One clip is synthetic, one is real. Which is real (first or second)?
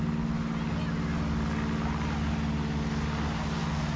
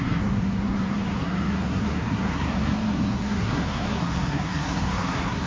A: first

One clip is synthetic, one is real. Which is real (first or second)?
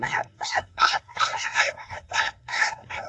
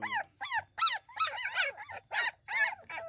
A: second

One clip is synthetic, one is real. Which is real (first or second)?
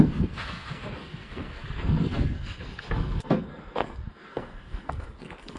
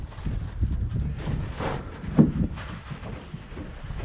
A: second